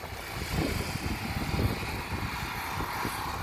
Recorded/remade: recorded